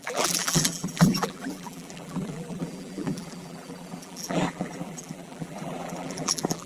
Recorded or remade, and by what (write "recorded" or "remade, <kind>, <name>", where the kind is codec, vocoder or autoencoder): remade, vocoder, BigVGAN v2